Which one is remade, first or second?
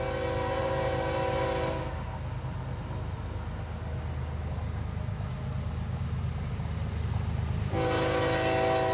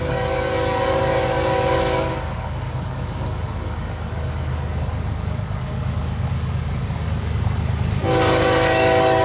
second